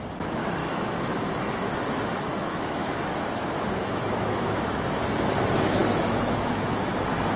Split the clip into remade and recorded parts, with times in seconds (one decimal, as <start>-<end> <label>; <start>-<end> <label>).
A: 0.0-0.6 recorded; 0.6-1.2 remade; 1.2-2.3 recorded; 2.3-4.7 remade; 4.7-5.8 recorded; 5.8-6.9 remade; 6.9-7.4 recorded